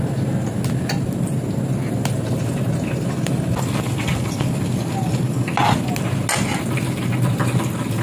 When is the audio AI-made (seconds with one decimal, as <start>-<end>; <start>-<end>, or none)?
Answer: none